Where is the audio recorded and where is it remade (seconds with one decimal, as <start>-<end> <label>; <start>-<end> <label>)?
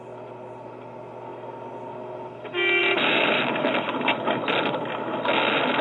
0.0-2.8 recorded; 2.8-3.5 remade; 3.5-5.8 recorded